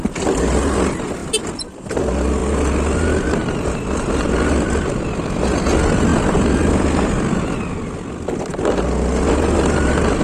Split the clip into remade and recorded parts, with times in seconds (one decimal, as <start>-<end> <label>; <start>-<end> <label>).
0.0-10.2 recorded